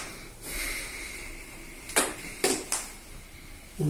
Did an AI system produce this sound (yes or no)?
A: no